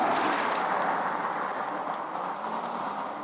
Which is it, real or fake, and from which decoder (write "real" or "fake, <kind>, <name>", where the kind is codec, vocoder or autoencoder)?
fake, vocoder, BigVGAN v2